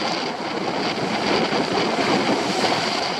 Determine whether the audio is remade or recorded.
recorded